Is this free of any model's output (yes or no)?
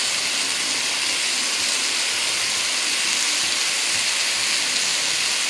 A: yes